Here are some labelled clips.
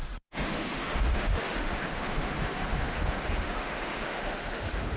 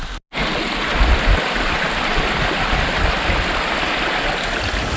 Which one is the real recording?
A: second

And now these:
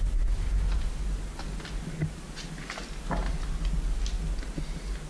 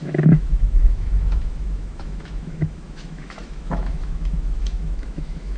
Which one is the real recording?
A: first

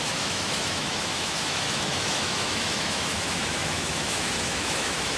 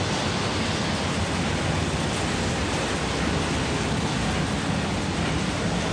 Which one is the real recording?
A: second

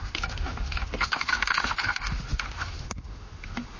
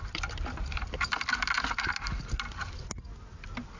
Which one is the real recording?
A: second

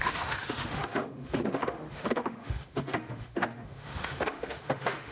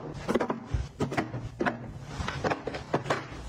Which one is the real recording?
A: second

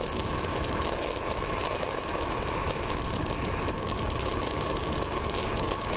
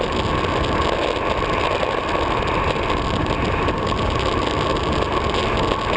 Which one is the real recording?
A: second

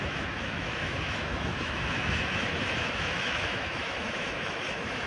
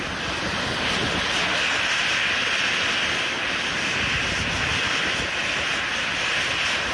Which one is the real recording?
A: second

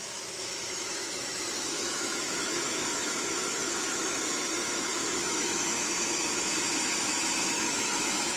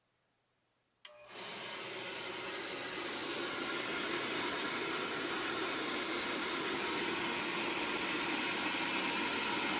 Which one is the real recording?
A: second